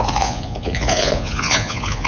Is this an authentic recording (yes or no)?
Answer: no